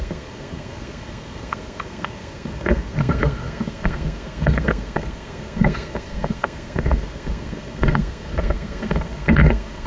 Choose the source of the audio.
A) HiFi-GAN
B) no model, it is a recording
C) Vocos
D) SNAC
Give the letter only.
D